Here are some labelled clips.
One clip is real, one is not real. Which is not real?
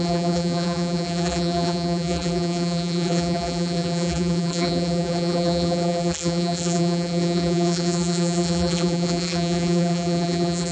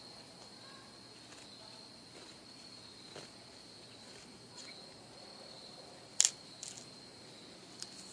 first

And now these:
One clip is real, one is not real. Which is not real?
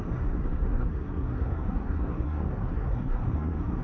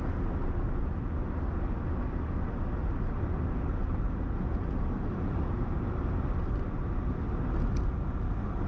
first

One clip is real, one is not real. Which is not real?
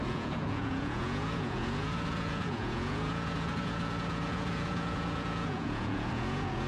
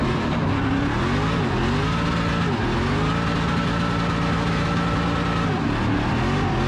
first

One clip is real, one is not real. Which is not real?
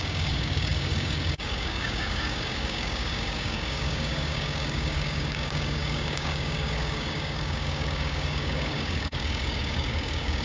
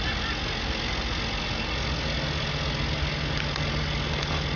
first